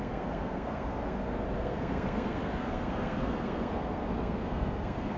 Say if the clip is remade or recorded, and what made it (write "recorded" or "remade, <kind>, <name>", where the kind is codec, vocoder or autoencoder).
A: remade, codec, SNAC